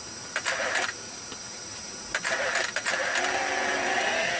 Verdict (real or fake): real